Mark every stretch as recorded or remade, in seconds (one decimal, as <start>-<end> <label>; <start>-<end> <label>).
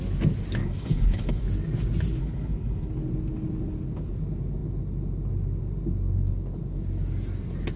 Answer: 0.0-0.6 recorded; 0.6-1.4 remade; 1.4-2.2 recorded; 2.2-2.9 remade; 2.9-7.8 recorded